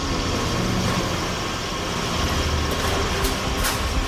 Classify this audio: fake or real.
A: real